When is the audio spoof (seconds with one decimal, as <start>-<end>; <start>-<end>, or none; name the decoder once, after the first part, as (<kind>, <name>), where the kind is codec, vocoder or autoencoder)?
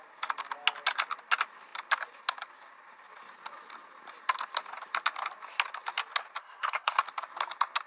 6.4-7.0 (codec, SNAC)